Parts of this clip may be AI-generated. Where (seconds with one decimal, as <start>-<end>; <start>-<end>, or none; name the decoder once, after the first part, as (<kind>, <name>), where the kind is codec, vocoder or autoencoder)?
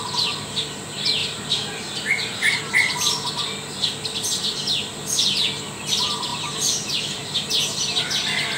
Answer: 1.2-2.6 (vocoder, BigVGAN v2); 6.3-7.5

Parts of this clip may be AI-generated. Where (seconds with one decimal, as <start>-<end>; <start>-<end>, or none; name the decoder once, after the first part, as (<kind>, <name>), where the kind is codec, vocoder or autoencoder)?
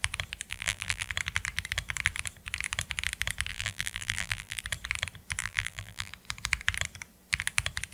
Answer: 0.5-1.1 (vocoder, BigVGAN v2); 3.5-4.6; 5.4-6.1